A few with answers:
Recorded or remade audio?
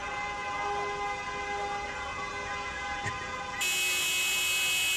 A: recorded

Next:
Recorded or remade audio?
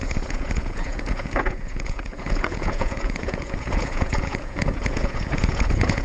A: remade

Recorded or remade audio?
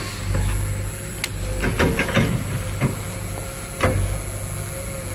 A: recorded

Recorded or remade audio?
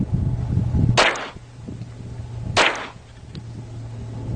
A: recorded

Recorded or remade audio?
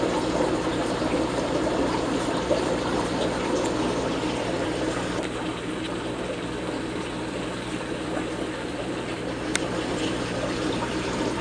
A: remade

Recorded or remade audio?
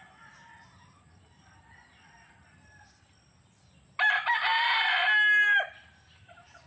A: recorded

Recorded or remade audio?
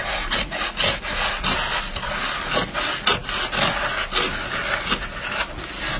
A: recorded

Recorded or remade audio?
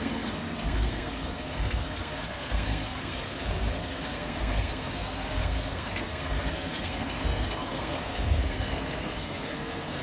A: remade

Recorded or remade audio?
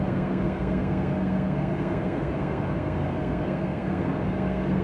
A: remade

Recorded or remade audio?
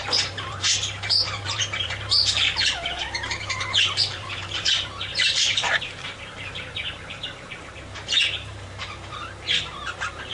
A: remade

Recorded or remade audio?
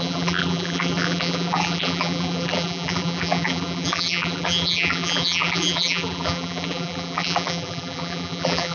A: remade